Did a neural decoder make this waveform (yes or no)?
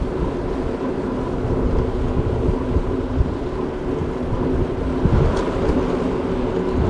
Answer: no